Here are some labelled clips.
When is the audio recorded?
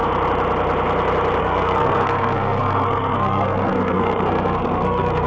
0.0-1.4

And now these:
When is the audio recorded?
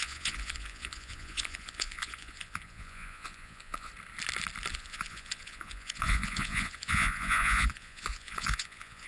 3.9-4.7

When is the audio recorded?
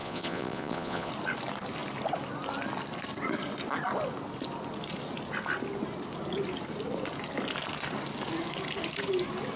1.1-9.6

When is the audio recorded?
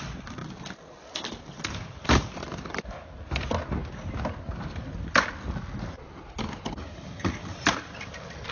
0.0-0.4; 2.5-7.4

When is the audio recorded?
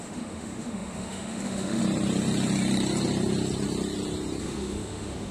1.8-4.4